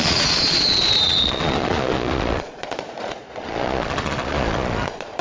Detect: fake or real fake